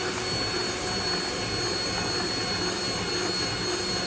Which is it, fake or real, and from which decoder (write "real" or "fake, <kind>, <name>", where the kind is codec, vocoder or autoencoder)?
real